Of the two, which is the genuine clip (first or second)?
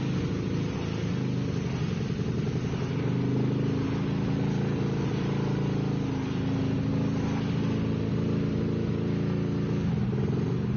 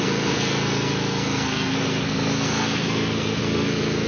first